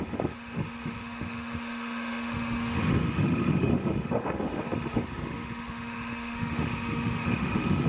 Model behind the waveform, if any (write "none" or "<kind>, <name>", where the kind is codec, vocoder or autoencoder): autoencoder, DAC-VAE